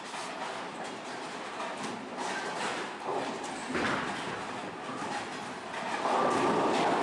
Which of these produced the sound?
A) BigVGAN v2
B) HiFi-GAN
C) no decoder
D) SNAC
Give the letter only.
C